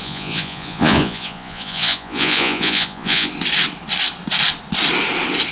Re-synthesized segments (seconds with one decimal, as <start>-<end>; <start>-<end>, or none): 0.0-3.3

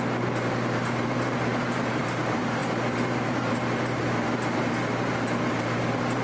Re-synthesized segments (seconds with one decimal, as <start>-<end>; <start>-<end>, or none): 0.0-6.2

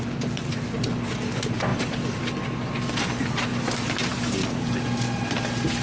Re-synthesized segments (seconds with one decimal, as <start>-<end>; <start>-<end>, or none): none